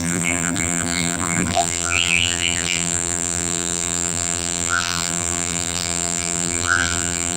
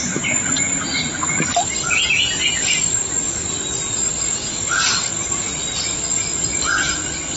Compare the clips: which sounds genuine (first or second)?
second